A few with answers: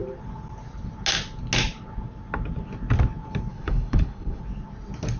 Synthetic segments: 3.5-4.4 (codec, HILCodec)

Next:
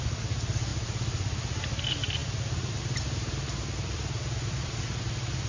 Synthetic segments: none

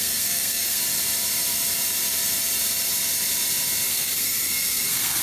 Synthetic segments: 0.0-0.8 (codec, SNAC); 3.9-5.2

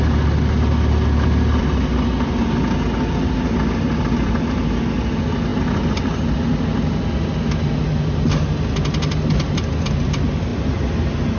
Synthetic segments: none

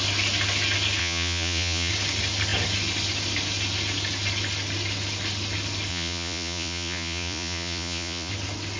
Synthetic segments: 1.0-1.9 (vocoder, Vocos); 5.9-8.3

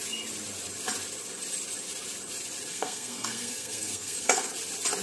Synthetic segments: 2.7-4.5 (codec, SNAC)